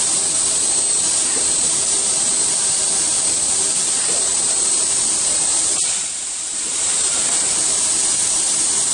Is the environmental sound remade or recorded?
remade